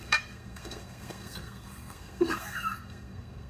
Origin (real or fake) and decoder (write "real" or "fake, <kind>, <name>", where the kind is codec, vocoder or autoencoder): fake, codec, SNAC